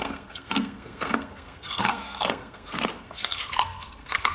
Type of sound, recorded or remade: remade